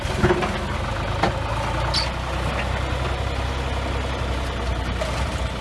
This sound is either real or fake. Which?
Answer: real